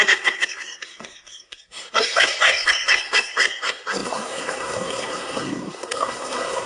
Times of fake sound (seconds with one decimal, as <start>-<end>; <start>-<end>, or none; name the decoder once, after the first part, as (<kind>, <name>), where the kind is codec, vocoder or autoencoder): 0.0-6.7 (codec, SNAC)